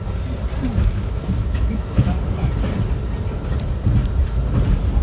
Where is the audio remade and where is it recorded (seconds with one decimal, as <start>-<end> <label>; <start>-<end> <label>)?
0.0-0.7 recorded; 0.7-2.0 remade; 2.0-5.0 recorded